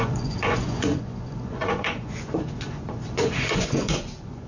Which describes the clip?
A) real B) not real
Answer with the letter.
B